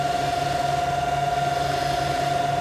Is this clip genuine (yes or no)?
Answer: yes